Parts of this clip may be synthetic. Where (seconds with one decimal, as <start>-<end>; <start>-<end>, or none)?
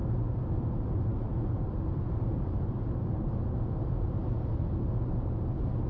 none